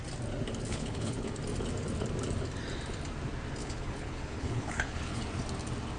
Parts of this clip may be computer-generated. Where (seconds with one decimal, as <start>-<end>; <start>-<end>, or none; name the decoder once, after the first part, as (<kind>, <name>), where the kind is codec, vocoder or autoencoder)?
0.7-1.3 (codec, HILCodec); 3.6-5.2

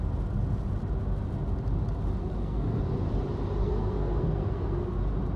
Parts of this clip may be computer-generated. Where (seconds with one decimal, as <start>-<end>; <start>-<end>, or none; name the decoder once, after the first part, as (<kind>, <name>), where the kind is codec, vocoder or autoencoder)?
2.2-2.8 (codec, SNAC); 3.6-4.8